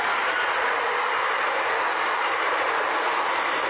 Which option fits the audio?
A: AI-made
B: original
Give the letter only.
B